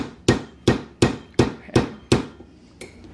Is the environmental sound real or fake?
real